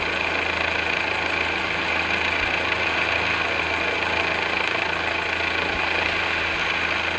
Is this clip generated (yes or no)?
no